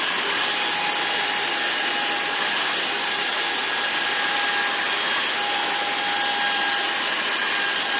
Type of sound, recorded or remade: recorded